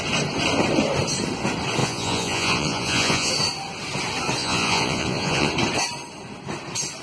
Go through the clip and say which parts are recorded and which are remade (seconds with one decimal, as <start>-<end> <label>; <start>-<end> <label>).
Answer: 0.0-1.8 recorded; 1.8-3.3 remade; 3.3-4.4 recorded; 4.4-5.5 remade; 5.5-7.0 recorded

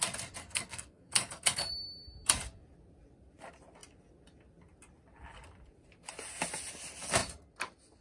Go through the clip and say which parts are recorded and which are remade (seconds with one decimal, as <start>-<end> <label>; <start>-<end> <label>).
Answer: 0.0-0.4 recorded; 0.4-1.7 remade; 1.7-8.0 recorded

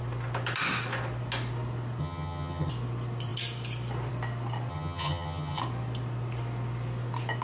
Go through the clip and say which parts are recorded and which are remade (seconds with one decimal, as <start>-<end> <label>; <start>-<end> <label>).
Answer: 0.0-2.0 recorded; 2.0-2.7 remade; 2.7-4.7 recorded; 4.7-5.6 remade; 5.6-7.4 recorded

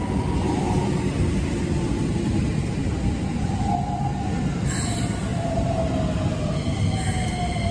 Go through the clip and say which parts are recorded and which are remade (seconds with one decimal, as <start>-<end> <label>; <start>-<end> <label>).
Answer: 0.0-7.7 recorded